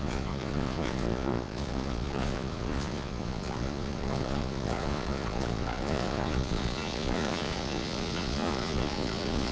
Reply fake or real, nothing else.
fake